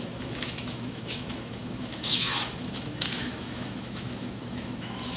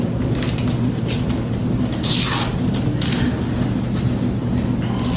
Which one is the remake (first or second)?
first